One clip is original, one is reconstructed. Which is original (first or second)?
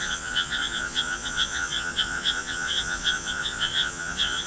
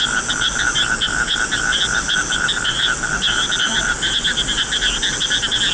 second